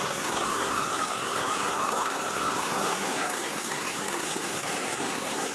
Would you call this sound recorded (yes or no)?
no